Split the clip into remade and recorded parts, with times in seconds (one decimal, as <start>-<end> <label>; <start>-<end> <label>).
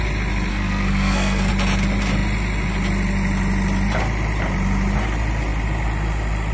0.0-0.5 recorded; 0.5-1.5 remade; 1.5-6.5 recorded